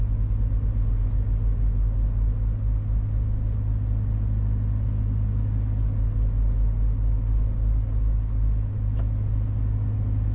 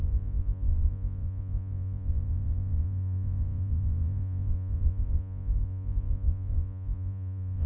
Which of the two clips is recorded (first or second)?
first